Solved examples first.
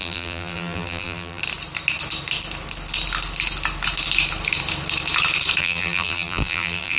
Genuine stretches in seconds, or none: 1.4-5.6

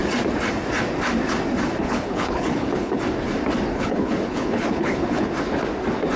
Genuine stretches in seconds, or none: 0.0-1.8; 3.0-3.7; 5.3-6.2

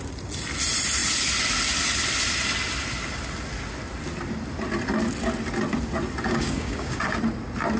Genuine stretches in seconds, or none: 0.0-6.3; 7.0-7.8

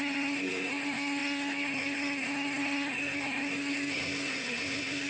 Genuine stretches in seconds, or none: none

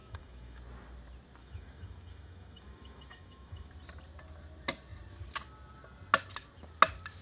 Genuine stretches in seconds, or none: 0.6-1.4; 3.7-7.2

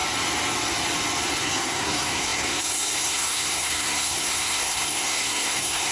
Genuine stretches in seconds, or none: 0.0-1.4

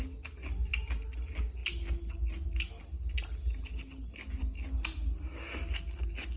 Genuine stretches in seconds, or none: 0.0-6.4

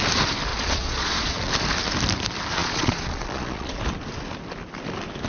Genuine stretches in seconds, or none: 0.0-0.5; 1.4-2.6; 3.8-5.3